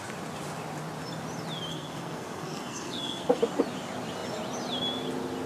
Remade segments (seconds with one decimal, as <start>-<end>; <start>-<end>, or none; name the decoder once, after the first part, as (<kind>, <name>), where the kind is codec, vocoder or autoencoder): 1.7-3.4 (codec, SNAC)